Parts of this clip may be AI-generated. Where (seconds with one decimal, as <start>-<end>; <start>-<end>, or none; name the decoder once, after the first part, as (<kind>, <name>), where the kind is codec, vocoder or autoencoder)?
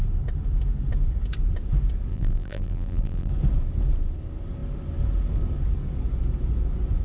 2.1-3.3 (vocoder, BigVGAN v2)